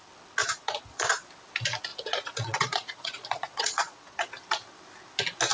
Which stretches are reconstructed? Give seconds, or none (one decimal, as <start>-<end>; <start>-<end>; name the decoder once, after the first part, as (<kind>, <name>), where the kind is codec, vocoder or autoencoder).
0.4-1.2 (vocoder, Vocos); 1.9-4.3